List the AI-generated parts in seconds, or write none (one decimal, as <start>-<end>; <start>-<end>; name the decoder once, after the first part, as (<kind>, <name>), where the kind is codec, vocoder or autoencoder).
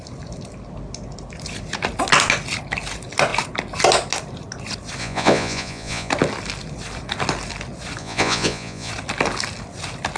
5.0-6.1 (vocoder, Vocos); 8.0-8.9